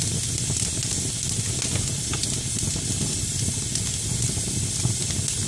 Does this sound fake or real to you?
real